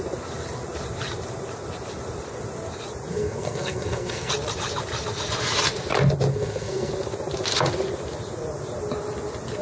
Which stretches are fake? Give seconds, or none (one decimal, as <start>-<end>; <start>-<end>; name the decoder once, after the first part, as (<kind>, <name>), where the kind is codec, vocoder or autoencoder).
3.1-4.3 (codec, SNAC); 6.3-6.9